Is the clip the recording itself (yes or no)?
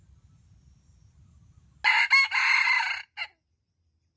yes